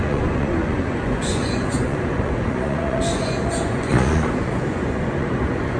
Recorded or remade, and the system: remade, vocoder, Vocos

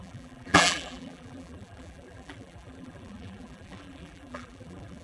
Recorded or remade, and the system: remade, vocoder, BigVGAN v2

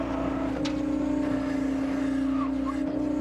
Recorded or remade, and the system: recorded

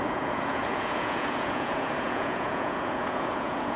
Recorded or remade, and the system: remade, vocoder, Vocos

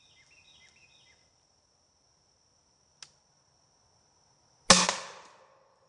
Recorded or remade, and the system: recorded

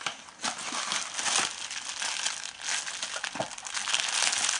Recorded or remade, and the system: recorded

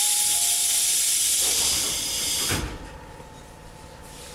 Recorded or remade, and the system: remade, vocoder, BigVGAN v2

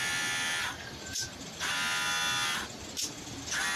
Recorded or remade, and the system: recorded